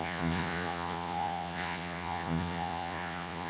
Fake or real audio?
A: fake